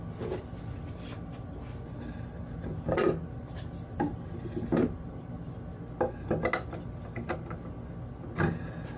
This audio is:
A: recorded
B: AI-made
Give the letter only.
A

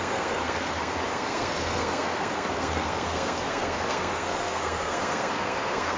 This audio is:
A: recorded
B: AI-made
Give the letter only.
B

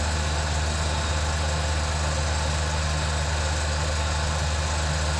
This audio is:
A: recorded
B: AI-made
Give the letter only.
A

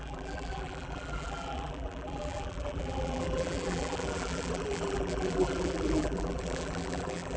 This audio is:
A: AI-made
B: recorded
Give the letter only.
A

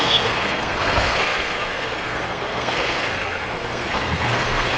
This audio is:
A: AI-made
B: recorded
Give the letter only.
A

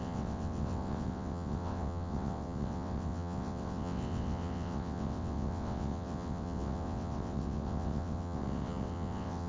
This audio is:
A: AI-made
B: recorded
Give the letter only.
A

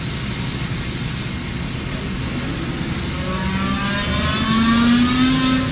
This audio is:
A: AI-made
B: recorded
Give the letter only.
B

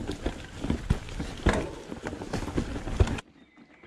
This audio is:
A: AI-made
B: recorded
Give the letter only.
B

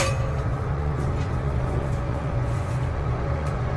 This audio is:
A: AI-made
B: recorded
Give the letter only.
A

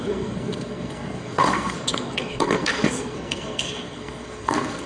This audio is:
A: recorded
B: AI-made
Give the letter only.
B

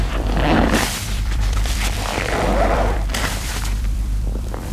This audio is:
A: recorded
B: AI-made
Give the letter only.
B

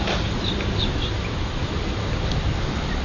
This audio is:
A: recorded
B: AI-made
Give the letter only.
A